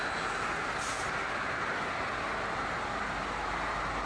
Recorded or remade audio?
recorded